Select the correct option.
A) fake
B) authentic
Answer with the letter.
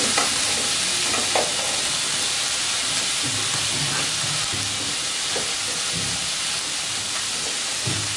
B